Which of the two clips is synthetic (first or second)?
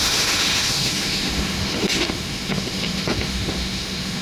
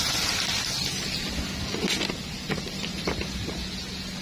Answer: first